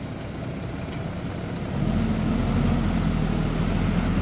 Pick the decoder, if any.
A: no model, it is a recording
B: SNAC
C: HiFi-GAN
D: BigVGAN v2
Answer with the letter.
A